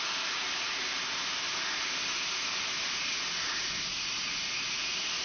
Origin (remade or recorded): recorded